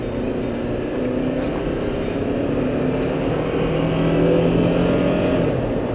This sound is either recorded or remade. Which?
recorded